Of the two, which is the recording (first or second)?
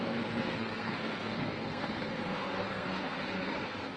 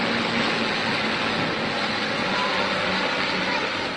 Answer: second